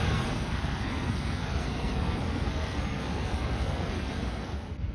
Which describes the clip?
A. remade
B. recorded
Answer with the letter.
A